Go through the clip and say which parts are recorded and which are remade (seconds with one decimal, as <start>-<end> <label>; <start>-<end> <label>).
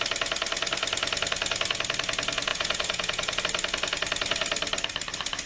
0.0-2.5 recorded; 2.5-3.4 remade; 3.4-5.5 recorded